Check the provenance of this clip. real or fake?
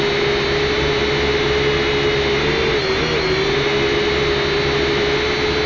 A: real